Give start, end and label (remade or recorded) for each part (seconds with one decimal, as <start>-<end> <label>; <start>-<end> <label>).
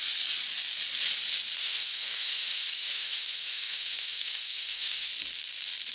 0.0-1.6 recorded; 1.6-5.1 remade; 5.1-5.9 recorded